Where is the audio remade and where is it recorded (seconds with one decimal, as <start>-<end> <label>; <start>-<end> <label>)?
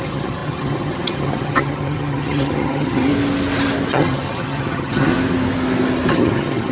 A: 0.0-3.1 remade; 3.1-3.9 recorded; 3.9-5.1 remade; 5.1-6.1 recorded; 6.1-6.7 remade